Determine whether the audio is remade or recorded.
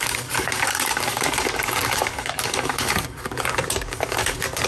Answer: remade